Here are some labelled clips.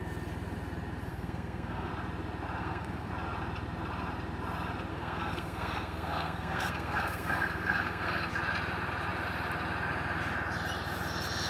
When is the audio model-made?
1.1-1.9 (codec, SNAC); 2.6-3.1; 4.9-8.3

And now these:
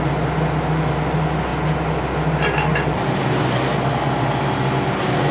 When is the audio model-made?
none

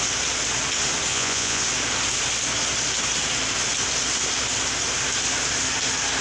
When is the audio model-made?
1.1-1.6 (vocoder, Vocos)

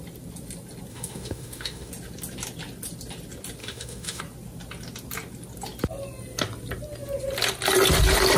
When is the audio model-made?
0.9-1.9 (autoencoder, DAC-VAE); 3.6-4.2

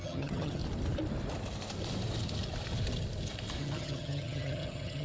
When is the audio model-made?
0.0-0.6 (vocoder, HiFi-GAN); 3.6-5.0

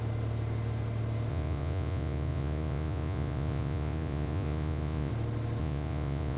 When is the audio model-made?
1.3-5.1 (vocoder, Vocos); 5.6-6.4